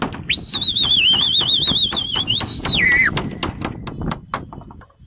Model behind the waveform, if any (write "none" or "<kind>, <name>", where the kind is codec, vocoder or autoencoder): none